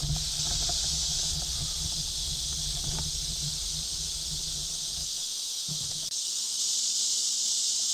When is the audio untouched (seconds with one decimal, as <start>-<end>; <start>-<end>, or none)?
0.0-5.0; 6.4-7.9